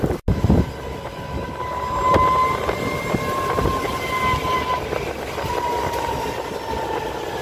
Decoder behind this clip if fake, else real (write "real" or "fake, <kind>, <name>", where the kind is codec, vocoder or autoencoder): real